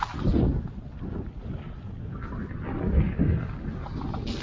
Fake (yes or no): no